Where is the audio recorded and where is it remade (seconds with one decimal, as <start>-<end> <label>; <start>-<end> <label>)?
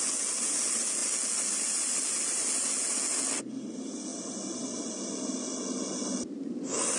0.0-7.0 recorded